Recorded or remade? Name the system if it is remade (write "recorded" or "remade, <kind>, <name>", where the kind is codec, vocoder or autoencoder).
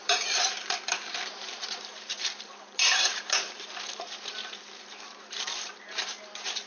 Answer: remade, vocoder, BigVGAN v2